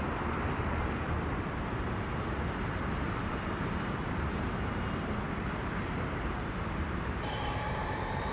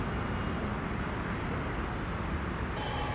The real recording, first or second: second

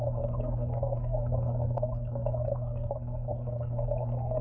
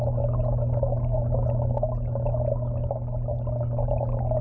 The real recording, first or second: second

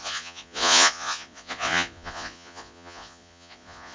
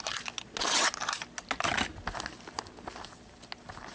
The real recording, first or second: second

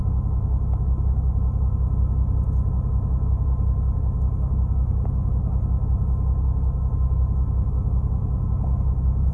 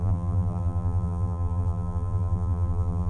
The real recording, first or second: first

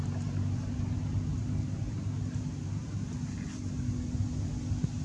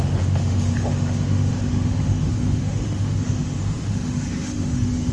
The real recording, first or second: first